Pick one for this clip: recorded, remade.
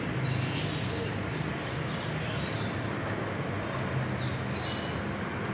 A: recorded